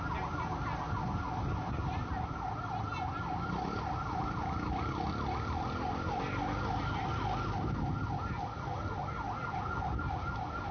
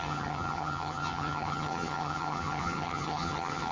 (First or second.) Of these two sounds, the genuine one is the first